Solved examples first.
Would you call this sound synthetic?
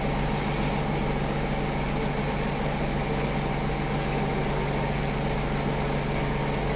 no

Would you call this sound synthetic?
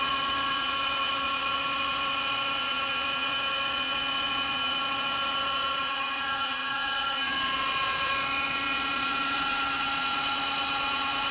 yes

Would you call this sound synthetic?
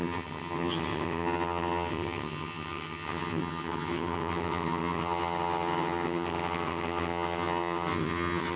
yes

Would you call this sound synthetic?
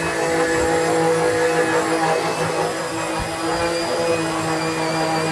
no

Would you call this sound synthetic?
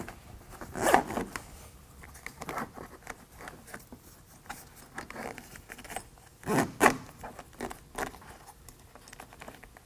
no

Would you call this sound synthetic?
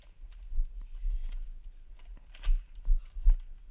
no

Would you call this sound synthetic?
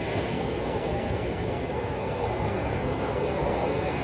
yes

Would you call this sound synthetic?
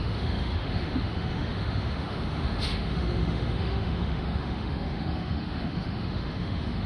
yes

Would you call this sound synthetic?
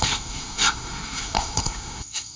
yes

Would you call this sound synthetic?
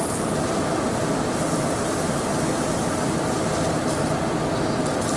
no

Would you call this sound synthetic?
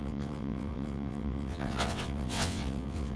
yes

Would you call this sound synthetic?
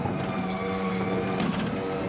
yes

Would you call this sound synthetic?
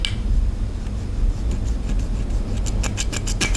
no